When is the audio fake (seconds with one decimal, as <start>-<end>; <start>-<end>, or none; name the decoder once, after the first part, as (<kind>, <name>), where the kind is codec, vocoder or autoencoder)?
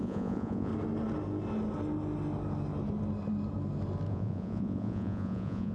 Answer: 0.0-0.7 (vocoder, Vocos); 4.1-5.7